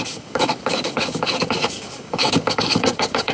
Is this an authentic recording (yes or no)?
no